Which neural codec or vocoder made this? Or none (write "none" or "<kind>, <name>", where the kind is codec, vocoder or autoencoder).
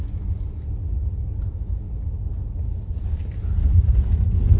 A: none